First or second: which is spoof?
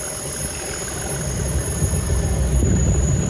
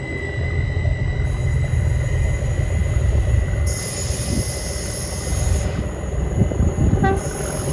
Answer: first